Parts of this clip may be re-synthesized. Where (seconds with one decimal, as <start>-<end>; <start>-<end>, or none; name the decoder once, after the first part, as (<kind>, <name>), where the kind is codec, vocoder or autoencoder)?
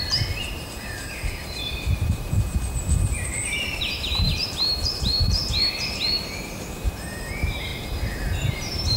0.0-5.4 (vocoder, BigVGAN v2); 6.4-7.7; 8.5-9.0